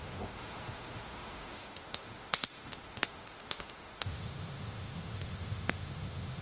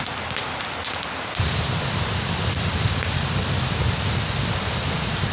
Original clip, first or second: second